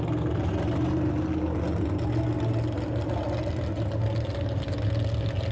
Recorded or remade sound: recorded